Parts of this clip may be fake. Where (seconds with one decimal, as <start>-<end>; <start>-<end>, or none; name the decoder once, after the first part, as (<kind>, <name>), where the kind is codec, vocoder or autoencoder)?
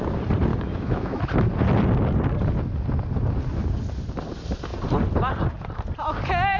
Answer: 0.5-1.2 (autoencoder, DAC-VAE)